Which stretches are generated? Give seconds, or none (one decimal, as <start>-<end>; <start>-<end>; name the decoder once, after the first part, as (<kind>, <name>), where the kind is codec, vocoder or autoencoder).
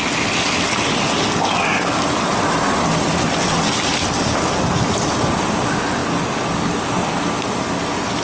none